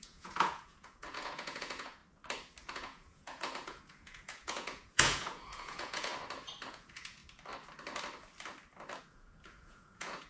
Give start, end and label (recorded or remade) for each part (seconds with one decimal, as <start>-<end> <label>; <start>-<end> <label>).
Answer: 0.0-2.0 remade; 2.0-2.7 recorded; 2.7-6.1 remade; 6.1-6.7 recorded; 6.7-7.2 remade; 7.2-9.0 recorded; 9.0-10.3 remade